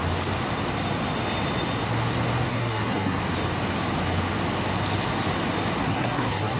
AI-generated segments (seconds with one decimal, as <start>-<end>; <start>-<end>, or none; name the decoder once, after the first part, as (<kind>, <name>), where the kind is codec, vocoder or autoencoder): 2.5-3.2 (codec, SNAC); 5.8-6.6